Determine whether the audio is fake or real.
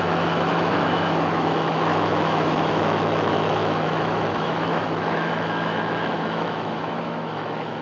fake